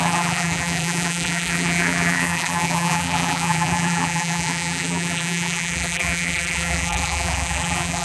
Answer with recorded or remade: remade